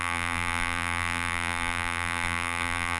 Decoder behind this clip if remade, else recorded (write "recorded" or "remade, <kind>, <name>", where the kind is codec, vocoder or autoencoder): remade, vocoder, BigVGAN v2